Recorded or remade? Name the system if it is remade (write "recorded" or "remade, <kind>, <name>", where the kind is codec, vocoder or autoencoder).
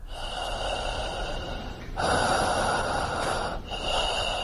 recorded